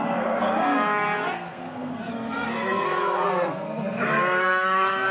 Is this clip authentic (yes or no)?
no